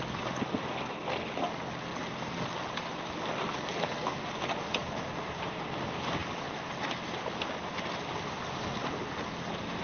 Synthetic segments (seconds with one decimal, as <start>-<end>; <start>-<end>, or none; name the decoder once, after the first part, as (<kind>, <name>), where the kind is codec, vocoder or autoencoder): 1.9-3.3 (vocoder, BigVGAN v2); 4.8-5.8; 6.2-9.8

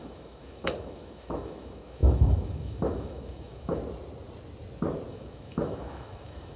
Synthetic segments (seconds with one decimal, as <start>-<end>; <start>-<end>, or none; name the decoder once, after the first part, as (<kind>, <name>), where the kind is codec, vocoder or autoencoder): 0.0-3.8 (autoencoder, DAC-VAE); 5.1-6.6

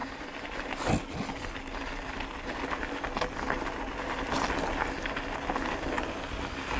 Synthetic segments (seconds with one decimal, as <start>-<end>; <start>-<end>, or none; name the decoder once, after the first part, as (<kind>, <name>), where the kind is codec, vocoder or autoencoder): 0.0-0.6 (vocoder, BigVGAN v2)

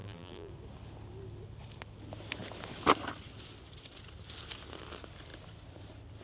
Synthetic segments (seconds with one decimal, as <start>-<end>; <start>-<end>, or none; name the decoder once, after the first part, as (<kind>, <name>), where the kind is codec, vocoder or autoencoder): 0.0-0.5 (vocoder, BigVGAN v2)

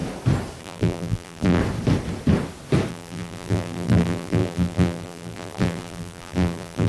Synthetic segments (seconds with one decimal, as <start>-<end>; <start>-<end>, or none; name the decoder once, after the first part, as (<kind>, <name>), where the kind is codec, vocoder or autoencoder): 0.6-1.6 (vocoder, BigVGAN v2); 2.9-6.9

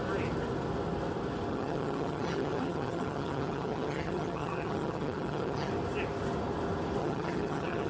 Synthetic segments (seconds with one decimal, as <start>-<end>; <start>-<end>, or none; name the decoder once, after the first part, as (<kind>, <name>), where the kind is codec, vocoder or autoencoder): 1.5-5.7 (vocoder, HiFi-GAN); 7.0-7.9

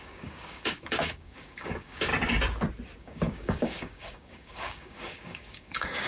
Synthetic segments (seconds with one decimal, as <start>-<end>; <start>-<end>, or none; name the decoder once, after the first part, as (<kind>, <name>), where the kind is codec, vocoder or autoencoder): 0.0-2.1 (codec, DAC); 3.0-6.1

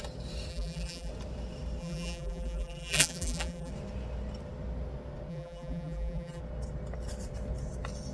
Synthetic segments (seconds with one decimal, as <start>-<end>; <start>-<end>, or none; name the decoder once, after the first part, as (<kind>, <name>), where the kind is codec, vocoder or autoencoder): 0.5-1.1 (vocoder, BigVGAN v2); 1.8-3.7; 5.3-6.4